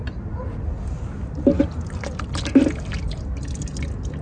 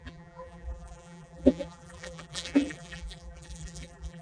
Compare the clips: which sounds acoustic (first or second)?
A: first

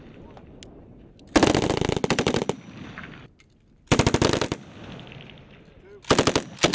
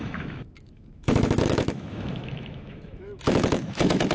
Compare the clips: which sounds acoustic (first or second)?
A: first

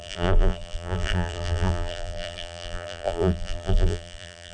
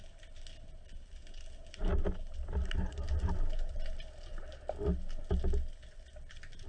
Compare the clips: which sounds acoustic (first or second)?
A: second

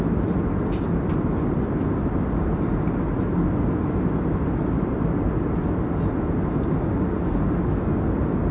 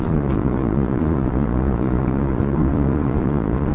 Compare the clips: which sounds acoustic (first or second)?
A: first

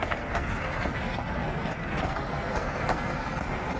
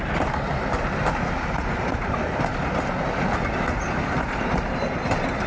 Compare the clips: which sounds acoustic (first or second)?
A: second